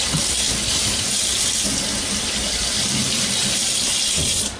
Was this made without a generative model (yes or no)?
yes